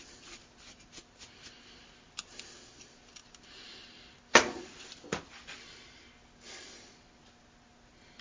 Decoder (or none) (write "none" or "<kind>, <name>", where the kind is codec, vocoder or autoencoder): none